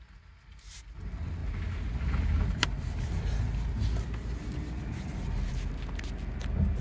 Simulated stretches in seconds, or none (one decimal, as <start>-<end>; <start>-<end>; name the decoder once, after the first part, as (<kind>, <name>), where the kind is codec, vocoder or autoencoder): none